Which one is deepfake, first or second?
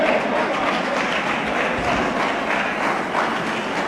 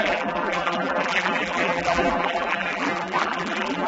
second